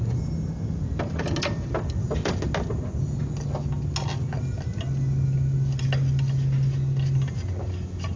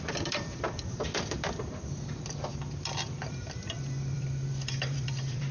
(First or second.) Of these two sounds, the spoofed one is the second